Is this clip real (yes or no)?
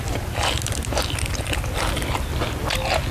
yes